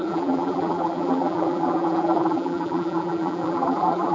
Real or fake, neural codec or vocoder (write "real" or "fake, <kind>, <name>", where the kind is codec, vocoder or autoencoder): fake, vocoder, BigVGAN v2